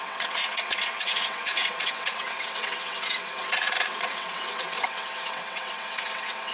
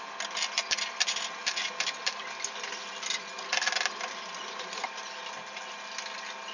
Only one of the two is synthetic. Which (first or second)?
first